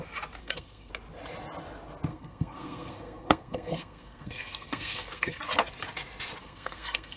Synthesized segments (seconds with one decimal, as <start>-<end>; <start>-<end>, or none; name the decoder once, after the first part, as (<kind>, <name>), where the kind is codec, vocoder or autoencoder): 0.4-0.9 (codec, SNAC); 2.1-5.4; 6.4-7.2